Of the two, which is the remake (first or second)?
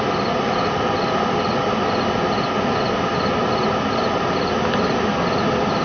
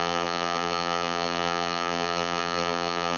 second